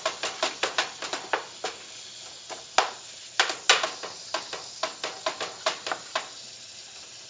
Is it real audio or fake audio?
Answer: real